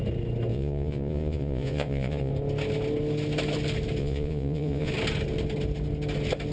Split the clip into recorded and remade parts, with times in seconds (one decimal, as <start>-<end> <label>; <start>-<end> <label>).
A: 0.0-0.5 recorded; 0.5-2.3 remade; 2.3-4.0 recorded; 4.0-4.9 remade; 4.9-6.5 recorded